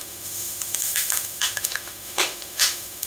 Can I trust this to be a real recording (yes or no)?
no